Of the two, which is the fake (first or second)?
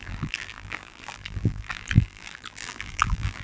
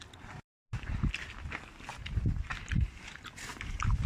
first